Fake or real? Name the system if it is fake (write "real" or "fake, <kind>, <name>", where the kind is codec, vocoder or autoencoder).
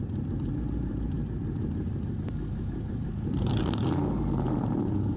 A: fake, vocoder, BigVGAN v2